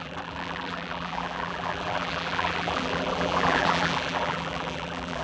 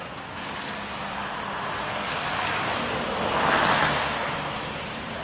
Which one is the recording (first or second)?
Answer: second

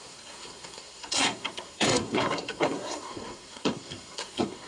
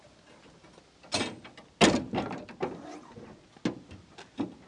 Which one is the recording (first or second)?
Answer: second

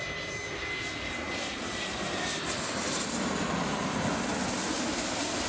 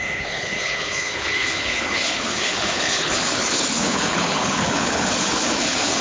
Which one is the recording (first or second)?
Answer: first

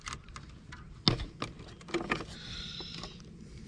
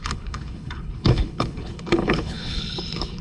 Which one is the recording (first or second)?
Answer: first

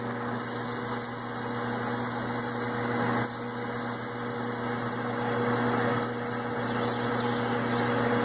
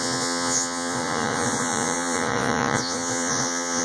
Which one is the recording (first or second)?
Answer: first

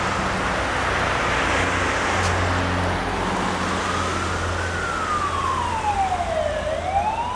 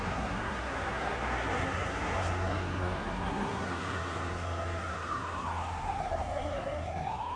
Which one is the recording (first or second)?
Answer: first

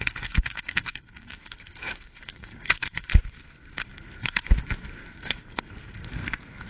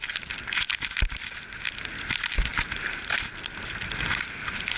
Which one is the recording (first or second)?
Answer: second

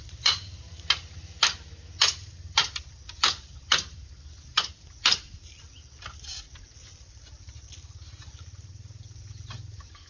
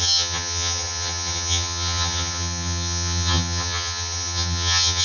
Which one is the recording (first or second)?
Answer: first